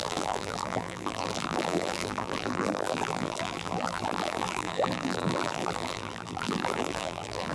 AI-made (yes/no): yes